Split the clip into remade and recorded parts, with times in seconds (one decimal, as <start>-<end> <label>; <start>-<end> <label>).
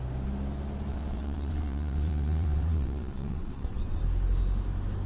0.0-0.9 recorded; 0.9-4.0 remade; 4.0-5.1 recorded